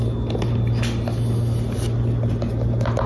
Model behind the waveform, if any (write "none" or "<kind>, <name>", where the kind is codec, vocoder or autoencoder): none